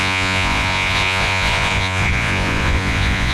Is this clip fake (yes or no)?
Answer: yes